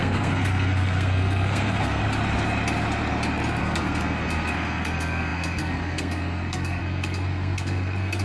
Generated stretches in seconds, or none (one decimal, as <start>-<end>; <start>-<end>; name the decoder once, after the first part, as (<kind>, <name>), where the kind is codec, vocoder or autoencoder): 0.0-2.0 (codec, SNAC); 3.6-8.2